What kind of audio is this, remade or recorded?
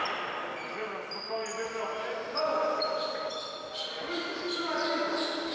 recorded